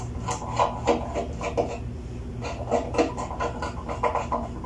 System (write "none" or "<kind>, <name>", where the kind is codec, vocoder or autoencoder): none